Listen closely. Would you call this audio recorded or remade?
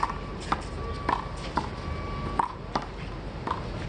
recorded